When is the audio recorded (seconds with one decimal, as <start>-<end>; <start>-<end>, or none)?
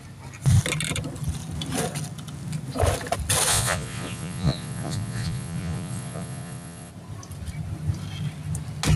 0.0-3.5; 6.9-9.0